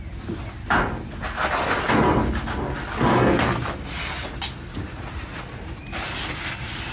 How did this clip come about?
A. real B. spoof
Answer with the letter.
A